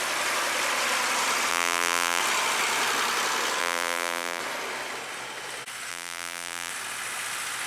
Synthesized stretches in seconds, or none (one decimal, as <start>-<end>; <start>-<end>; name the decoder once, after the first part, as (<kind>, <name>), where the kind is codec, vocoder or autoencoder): 1.5-2.2 (vocoder, BigVGAN v2); 3.6-4.4; 5.9-6.7

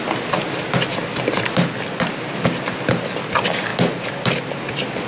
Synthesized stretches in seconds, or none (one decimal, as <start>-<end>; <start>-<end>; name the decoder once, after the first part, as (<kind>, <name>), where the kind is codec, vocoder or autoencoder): none

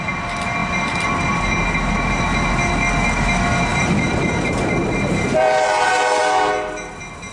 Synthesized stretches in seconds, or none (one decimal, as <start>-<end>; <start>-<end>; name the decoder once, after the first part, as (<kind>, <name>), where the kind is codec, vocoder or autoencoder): 3.7-6.2 (vocoder, BigVGAN v2)

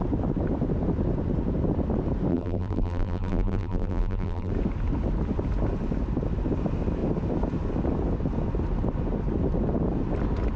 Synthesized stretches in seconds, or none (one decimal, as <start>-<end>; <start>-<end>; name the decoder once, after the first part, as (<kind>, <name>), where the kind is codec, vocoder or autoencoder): 2.3-4.5 (vocoder, BigVGAN v2)